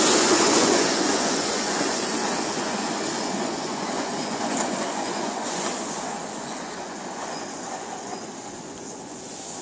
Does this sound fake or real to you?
fake